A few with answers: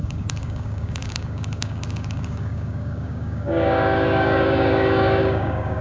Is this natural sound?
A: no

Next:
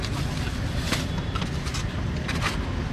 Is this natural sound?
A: yes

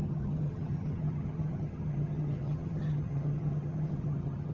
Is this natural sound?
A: no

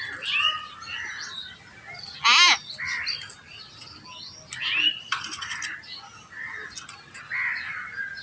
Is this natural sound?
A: yes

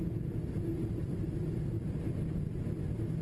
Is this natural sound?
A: yes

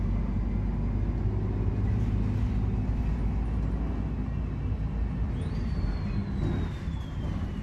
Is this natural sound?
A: yes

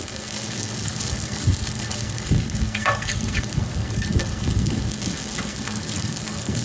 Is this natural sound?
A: no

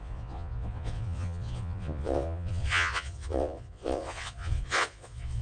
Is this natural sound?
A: no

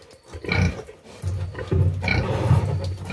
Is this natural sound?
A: yes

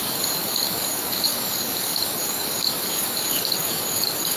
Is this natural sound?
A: no